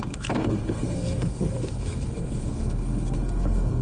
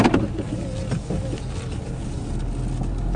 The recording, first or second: second